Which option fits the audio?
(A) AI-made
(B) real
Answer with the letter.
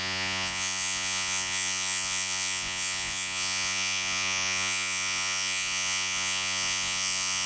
A